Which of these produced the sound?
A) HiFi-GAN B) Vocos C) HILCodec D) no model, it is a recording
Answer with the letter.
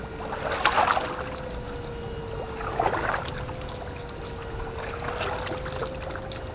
D